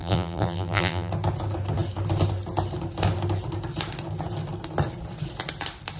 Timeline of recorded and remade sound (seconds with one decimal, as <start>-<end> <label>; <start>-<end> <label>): 0.0-1.1 remade; 1.1-6.0 recorded